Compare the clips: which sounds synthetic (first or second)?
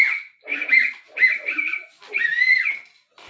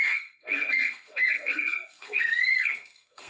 second